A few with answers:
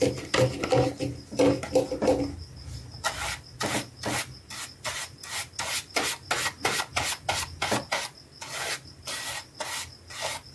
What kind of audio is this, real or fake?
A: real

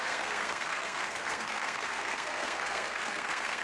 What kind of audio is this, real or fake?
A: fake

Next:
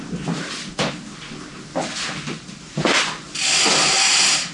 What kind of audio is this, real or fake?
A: real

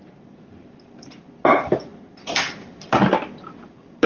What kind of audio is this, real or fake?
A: real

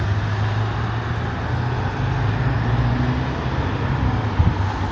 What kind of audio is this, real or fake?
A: real